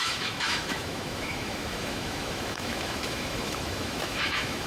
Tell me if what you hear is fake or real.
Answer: fake